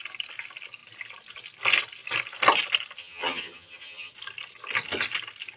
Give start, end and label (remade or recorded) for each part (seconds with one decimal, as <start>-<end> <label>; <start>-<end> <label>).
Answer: 0.0-3.0 recorded; 3.0-4.1 remade; 4.1-5.6 recorded